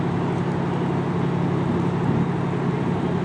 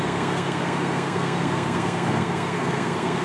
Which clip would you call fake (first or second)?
second